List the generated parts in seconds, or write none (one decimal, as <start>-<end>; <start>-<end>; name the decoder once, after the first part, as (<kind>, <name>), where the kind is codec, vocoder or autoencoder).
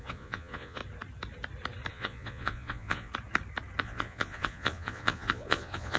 0.0-0.8 (vocoder, Vocos); 1.9-3.1; 3.8-6.0